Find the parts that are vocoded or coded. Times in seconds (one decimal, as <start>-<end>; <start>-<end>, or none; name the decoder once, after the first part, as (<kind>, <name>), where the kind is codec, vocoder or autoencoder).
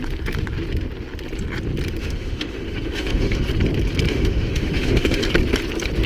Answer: 2.0-3.5 (autoencoder, DAC-VAE); 4.1-5.2